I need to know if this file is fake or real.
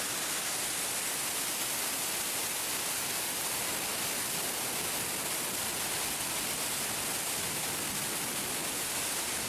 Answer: real